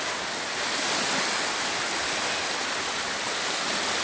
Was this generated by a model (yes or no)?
no